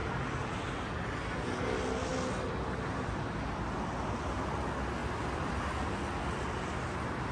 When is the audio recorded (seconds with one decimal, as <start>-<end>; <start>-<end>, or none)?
0.0-7.3